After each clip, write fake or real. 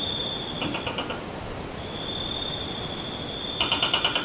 fake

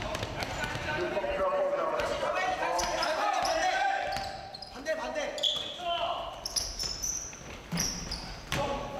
fake